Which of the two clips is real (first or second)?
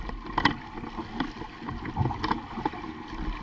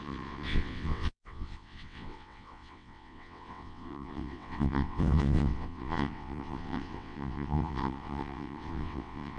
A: first